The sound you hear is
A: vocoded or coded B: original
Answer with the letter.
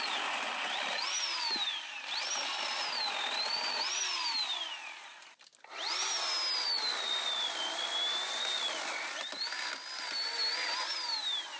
B